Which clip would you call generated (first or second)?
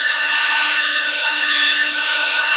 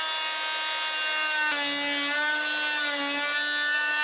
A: first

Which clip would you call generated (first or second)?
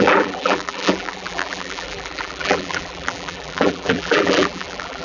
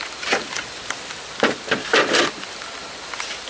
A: first